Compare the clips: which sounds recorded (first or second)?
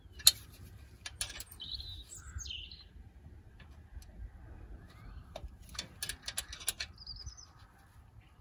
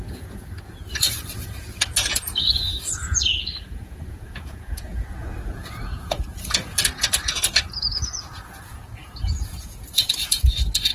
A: first